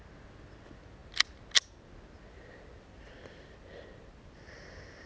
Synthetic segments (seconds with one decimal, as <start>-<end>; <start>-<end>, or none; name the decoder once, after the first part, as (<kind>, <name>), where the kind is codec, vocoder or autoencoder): none